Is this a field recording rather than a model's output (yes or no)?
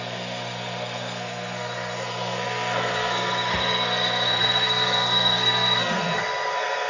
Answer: no